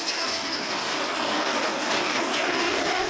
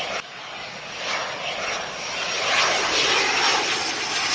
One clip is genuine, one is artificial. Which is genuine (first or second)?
second